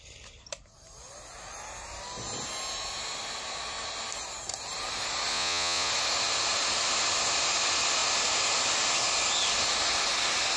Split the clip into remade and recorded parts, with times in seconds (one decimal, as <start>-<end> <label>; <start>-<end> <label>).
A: 0.0-5.3 recorded; 5.3-5.9 remade; 5.9-10.6 recorded